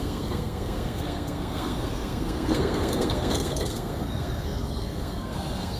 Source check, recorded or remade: remade